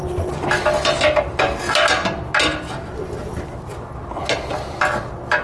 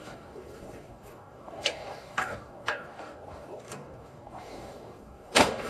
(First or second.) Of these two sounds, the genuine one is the first